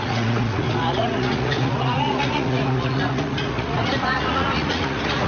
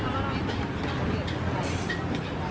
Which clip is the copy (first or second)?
first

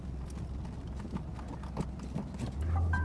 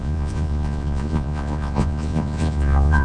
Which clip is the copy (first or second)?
second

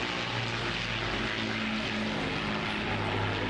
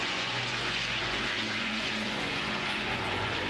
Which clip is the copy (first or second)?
second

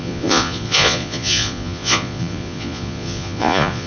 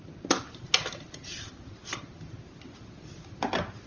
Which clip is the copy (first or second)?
first